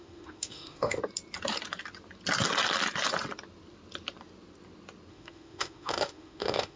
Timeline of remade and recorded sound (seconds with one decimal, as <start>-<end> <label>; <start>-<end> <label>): 0.0-1.0 remade; 1.0-5.1 recorded; 5.1-6.8 remade